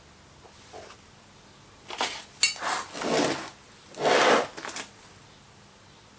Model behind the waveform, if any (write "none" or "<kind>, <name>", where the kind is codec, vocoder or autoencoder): none